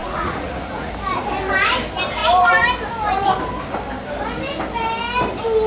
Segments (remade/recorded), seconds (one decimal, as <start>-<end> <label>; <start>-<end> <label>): 0.0-0.9 remade; 0.9-5.7 recorded